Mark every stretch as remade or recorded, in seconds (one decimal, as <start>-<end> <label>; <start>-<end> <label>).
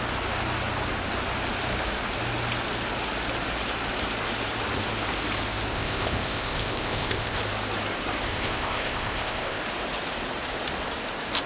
0.0-5.7 recorded; 5.7-7.4 remade; 7.4-8.3 recorded; 8.3-9.6 remade; 9.6-11.5 recorded